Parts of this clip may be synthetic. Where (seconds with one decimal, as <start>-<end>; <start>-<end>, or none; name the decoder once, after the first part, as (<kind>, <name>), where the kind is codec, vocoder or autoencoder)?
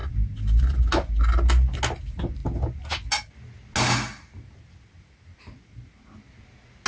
none